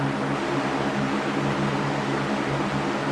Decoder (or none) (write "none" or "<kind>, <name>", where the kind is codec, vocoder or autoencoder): none